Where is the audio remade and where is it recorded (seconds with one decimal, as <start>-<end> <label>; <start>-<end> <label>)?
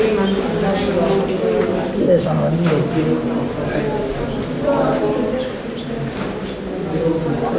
0.0-2.0 recorded; 2.0-2.5 remade; 2.5-7.6 recorded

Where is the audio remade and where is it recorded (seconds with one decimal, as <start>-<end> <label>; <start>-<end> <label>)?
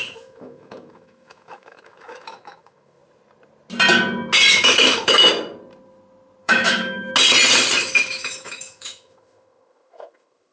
0.0-3.0 remade; 3.0-4.5 recorded; 4.5-5.3 remade; 5.3-6.4 recorded; 6.4-7.1 remade; 7.1-7.8 recorded; 7.8-10.5 remade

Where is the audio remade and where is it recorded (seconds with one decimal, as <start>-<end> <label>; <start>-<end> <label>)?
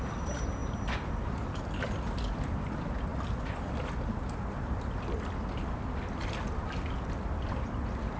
0.0-8.2 recorded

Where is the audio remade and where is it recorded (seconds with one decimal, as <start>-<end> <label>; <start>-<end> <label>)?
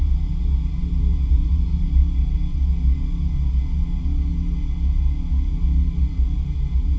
0.0-2.0 remade; 2.0-6.0 recorded; 6.0-7.0 remade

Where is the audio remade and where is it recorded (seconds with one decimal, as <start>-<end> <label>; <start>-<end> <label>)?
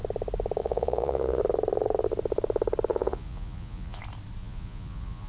0.0-0.6 recorded; 0.6-1.4 remade; 1.4-2.9 recorded; 2.9-4.0 remade; 4.0-4.4 recorded; 4.4-5.3 remade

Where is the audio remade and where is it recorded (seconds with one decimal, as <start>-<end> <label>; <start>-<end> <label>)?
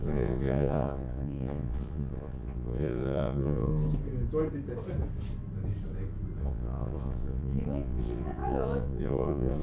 0.0-3.7 remade; 3.7-6.4 recorded; 6.4-9.6 remade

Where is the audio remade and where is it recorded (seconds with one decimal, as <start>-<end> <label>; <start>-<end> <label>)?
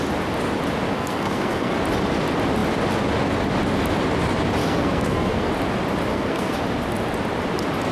0.0-0.9 recorded; 0.9-1.8 remade; 1.8-4.6 recorded; 4.6-5.5 remade; 5.5-6.1 recorded; 6.1-6.6 remade; 6.6-7.9 recorded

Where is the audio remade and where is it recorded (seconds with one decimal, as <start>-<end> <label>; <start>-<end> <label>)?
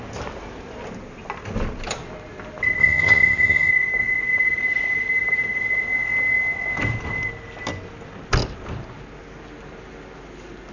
0.0-2.8 recorded; 2.8-3.7 remade; 3.7-10.7 recorded